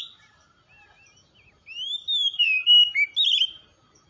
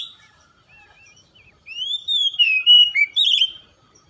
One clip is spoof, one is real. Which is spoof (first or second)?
second